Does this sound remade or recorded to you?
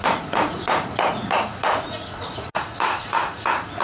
remade